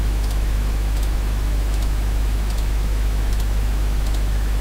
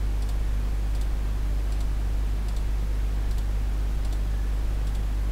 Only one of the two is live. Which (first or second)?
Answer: second